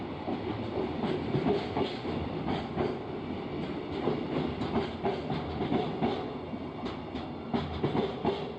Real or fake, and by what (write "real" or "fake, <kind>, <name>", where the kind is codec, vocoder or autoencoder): real